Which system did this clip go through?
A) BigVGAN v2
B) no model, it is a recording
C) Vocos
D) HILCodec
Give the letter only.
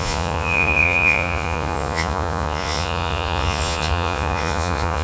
C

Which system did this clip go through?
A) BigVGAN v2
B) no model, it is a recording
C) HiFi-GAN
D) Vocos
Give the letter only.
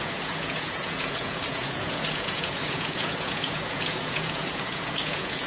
D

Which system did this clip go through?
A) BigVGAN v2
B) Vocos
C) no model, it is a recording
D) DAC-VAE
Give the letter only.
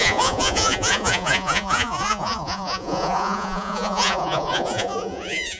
B